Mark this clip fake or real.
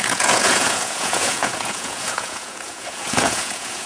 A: fake